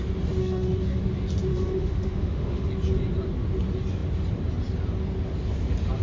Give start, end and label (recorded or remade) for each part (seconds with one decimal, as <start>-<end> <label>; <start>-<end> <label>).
0.0-0.4 recorded; 0.4-1.0 remade; 1.0-1.5 recorded; 1.5-2.7 remade; 2.7-6.0 recorded